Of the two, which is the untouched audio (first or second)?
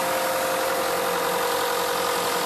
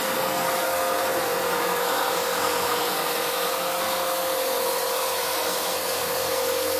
first